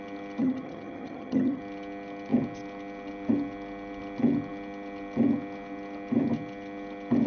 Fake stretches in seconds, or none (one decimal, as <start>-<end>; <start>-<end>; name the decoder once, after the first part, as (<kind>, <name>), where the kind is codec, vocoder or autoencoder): 0.4-1.6 (vocoder, HiFi-GAN)